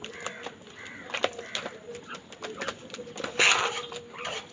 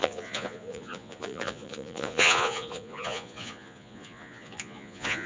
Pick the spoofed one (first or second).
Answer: second